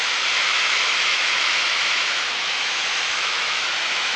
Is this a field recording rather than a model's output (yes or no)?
no